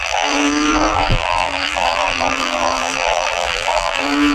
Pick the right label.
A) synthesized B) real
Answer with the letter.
A